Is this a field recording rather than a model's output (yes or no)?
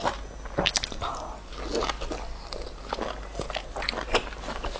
yes